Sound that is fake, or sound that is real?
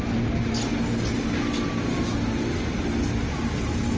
real